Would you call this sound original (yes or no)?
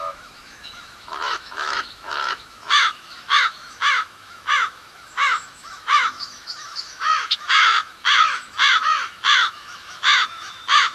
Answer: no